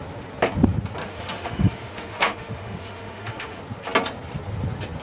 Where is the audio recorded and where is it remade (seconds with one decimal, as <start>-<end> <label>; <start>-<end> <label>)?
0.0-1.0 recorded; 1.0-3.6 remade; 3.6-5.0 recorded